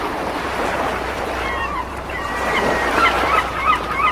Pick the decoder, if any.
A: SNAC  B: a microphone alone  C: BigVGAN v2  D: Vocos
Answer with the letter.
C